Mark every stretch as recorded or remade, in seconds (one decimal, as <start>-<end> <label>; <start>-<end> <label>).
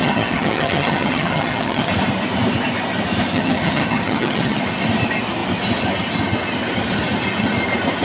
0.0-1.9 remade; 1.9-3.3 recorded; 3.3-4.6 remade; 4.6-8.0 recorded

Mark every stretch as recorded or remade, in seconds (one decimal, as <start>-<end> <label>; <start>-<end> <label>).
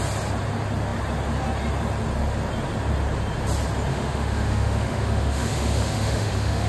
0.0-3.9 recorded; 3.9-6.7 remade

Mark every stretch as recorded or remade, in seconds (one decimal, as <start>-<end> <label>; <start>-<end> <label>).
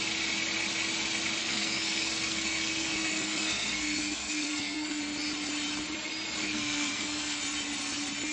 0.0-1.4 recorded; 1.4-5.0 remade; 5.0-6.4 recorded; 6.4-7.4 remade; 7.4-8.3 recorded